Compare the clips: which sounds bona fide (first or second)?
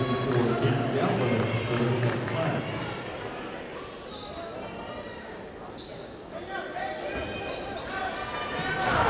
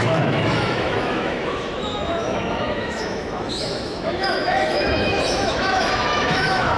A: first